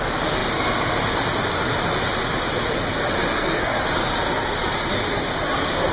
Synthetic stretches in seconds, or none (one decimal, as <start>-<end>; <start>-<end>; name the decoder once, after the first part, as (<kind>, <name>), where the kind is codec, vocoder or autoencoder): 3.3-3.8 (codec, SNAC)